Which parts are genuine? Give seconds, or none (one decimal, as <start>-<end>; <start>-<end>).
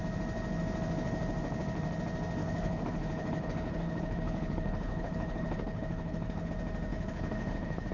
0.0-2.4; 6.5-6.9